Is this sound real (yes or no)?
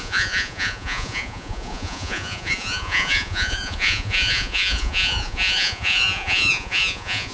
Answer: no